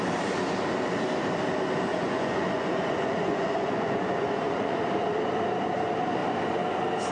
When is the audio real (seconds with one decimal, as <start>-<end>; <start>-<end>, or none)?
0.0-1.9; 4.7-7.1